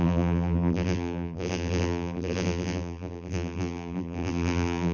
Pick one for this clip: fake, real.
fake